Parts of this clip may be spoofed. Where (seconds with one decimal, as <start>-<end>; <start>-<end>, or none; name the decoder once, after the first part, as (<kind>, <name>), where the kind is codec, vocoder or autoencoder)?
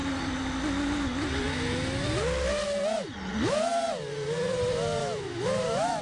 5.0-6.0 (autoencoder, DAC-VAE)